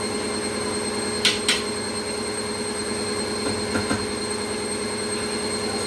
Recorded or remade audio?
recorded